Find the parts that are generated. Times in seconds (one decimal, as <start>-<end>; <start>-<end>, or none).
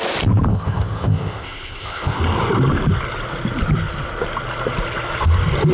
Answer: 0.5-2.2